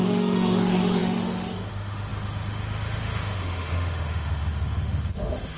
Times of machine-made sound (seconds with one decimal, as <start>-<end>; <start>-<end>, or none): 0.0-5.6